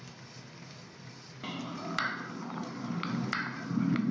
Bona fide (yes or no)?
yes